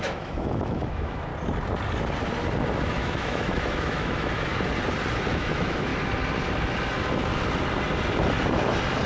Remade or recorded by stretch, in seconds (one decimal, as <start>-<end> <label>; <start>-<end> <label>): 0.0-1.3 remade; 1.3-2.9 recorded; 2.9-4.5 remade; 4.5-5.3 recorded; 5.3-5.9 remade; 5.9-9.1 recorded